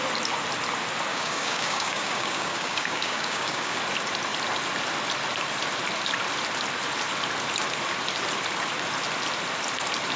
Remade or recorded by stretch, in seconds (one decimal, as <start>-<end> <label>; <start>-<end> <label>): 0.0-1.1 recorded; 1.1-3.8 remade; 3.8-10.2 recorded